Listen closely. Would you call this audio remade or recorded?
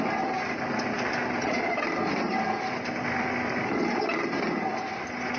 recorded